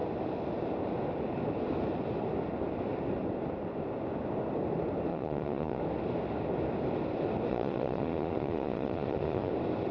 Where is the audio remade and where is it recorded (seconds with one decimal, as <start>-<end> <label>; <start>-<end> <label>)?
0.0-5.1 recorded; 5.1-5.8 remade; 5.8-7.5 recorded; 7.5-9.5 remade; 9.5-9.9 recorded